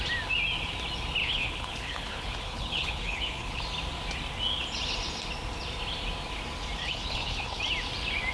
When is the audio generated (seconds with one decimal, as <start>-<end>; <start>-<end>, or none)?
1.2-3.6; 6.8-7.6

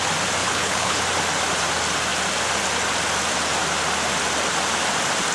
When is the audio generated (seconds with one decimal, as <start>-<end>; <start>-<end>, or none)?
0.4-1.0

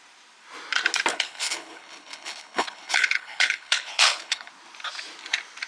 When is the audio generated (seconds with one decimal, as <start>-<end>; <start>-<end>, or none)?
1.1-4.5

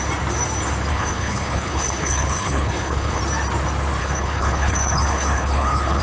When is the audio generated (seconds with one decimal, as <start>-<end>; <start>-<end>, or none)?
0.9-3.2; 4.0-6.0

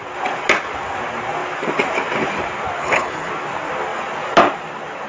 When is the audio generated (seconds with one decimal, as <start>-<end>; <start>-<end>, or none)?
2.8-3.3

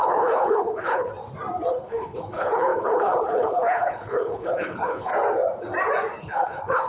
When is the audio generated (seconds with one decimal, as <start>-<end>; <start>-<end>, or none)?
0.0-1.1; 1.7-5.1; 6.2-6.9

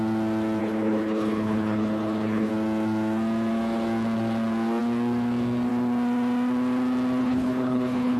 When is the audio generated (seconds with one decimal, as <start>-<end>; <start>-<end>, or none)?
0.6-2.5; 7.2-8.2